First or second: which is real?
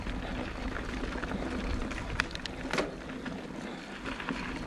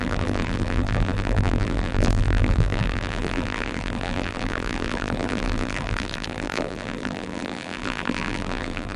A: first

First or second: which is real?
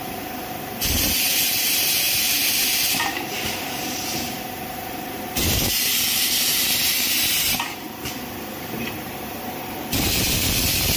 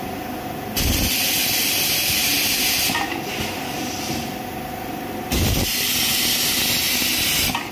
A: second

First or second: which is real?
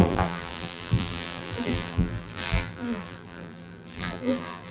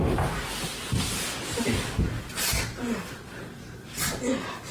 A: second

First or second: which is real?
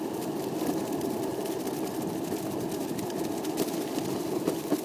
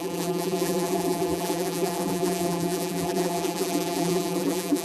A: first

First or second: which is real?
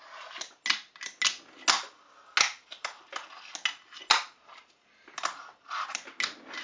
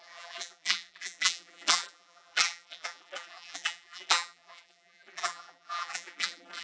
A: first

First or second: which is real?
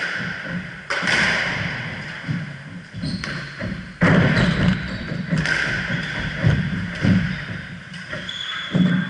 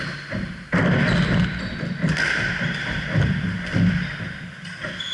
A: second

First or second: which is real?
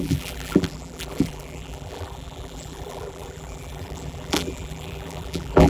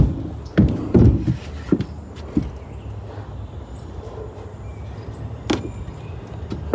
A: second